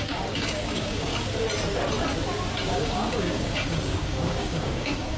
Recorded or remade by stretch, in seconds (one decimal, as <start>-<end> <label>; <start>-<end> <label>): 0.0-1.1 remade; 1.1-2.7 recorded; 2.7-5.2 remade